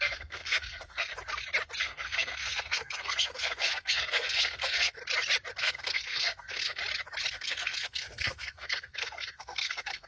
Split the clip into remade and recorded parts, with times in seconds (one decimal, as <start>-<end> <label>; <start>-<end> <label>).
0.0-1.1 remade; 1.1-1.8 recorded; 1.8-5.0 remade; 5.0-5.6 recorded; 5.6-6.8 remade; 6.8-7.3 recorded; 7.3-10.1 remade